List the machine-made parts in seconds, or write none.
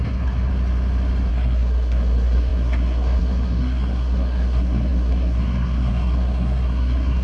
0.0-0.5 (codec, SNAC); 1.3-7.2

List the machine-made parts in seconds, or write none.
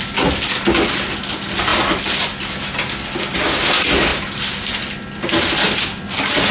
none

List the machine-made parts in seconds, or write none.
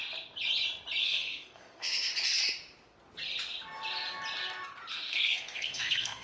1.0-2.1 (codec, SNAC); 4.9-6.2